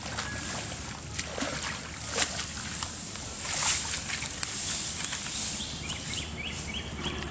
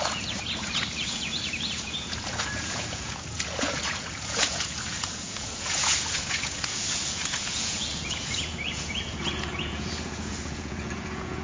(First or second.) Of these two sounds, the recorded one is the first